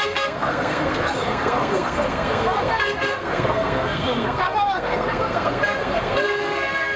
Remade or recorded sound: remade